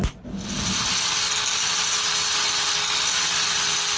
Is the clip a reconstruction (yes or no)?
no